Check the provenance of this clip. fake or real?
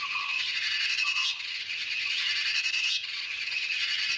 fake